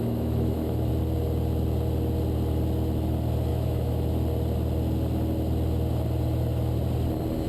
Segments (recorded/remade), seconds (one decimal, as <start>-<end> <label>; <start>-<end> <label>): 0.0-0.9 remade; 0.9-3.5 recorded; 3.5-4.1 remade; 4.1-7.5 recorded